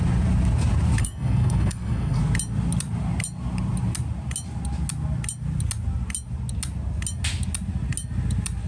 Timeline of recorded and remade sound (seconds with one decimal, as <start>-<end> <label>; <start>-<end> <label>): 0.0-1.0 recorded; 1.0-2.2 remade; 2.2-8.7 recorded